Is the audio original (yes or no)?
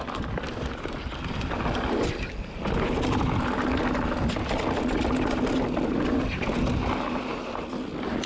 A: yes